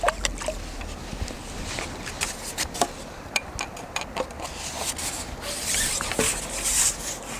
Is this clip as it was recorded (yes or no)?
yes